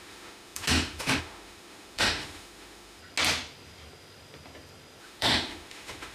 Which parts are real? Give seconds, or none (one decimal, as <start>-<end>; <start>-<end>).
3.0-5.0